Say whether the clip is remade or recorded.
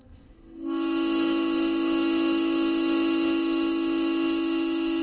remade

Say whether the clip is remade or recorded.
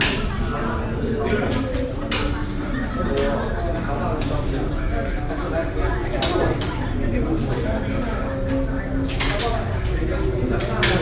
recorded